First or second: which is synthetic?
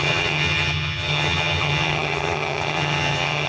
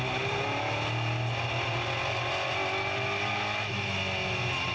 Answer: first